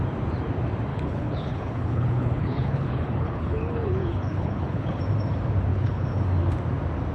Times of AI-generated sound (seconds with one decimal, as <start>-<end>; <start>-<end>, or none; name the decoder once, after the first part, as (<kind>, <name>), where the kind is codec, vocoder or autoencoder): 0.9-5.0 (codec, HILCodec); 5.7-6.2